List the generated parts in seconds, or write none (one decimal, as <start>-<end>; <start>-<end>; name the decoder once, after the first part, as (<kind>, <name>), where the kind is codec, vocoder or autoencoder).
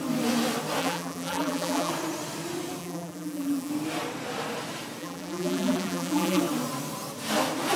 0.8-1.9 (vocoder, BigVGAN v2); 2.8-3.7; 5.0-6.4